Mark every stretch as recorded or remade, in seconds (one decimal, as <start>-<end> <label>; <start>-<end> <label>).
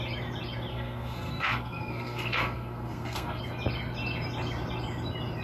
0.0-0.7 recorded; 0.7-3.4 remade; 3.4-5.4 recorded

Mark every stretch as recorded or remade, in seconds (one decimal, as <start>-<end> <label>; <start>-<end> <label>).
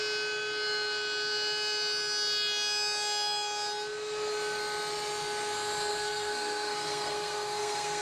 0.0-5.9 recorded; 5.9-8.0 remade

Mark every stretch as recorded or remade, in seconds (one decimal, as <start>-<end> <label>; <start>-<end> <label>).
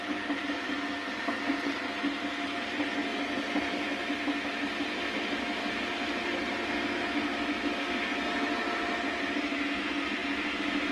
0.0-10.9 recorded